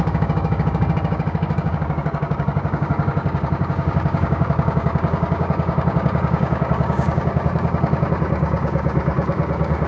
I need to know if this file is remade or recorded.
remade